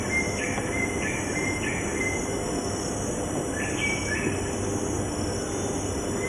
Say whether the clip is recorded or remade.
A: recorded